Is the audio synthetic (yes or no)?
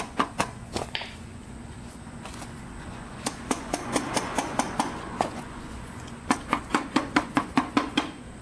yes